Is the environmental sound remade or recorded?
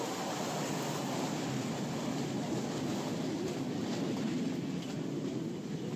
recorded